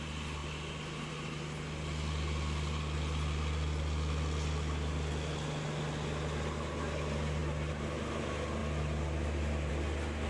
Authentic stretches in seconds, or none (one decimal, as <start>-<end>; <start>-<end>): 0.0-10.3